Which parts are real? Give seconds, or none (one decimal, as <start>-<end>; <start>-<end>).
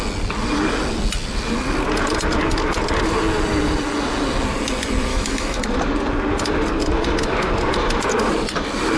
0.0-5.1; 5.6-9.0